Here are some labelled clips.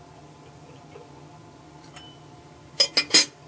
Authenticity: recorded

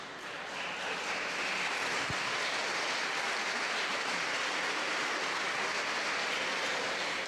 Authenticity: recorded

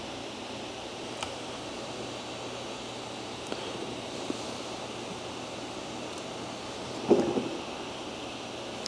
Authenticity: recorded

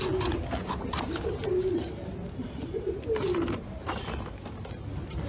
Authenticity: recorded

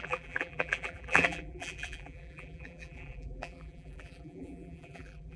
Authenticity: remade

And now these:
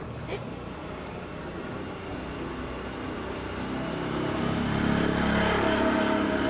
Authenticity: recorded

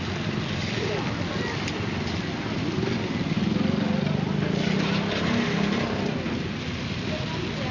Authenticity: recorded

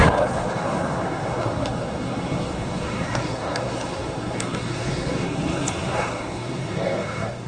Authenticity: remade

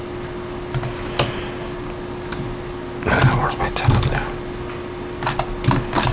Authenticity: recorded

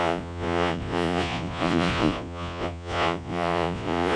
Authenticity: remade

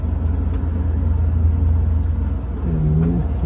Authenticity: recorded